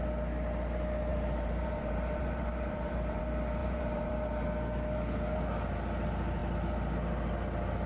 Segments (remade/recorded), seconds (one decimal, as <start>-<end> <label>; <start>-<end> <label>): 0.0-1.1 recorded; 1.1-3.2 remade; 3.2-3.6 recorded; 3.6-4.1 remade; 4.1-7.9 recorded

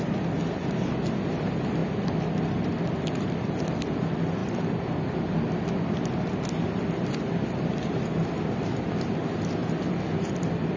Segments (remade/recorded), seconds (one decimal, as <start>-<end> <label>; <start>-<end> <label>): 0.0-1.8 recorded; 1.8-3.6 remade; 3.6-4.4 recorded; 4.4-6.0 remade; 6.0-9.6 recorded; 9.6-10.8 remade

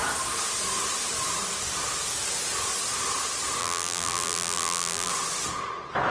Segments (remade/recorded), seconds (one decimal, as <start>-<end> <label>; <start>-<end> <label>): 0.0-3.6 recorded; 3.6-5.1 remade; 5.1-6.1 recorded

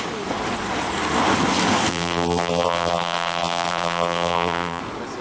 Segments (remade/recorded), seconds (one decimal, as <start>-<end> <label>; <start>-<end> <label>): 0.0-1.9 recorded; 1.9-4.8 remade; 4.8-5.2 recorded

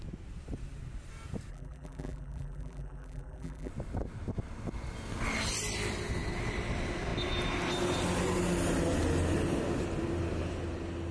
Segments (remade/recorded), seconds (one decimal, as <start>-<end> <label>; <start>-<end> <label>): 0.0-1.5 recorded; 1.5-3.7 remade; 3.7-11.1 recorded